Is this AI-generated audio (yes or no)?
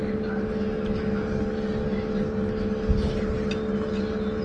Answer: no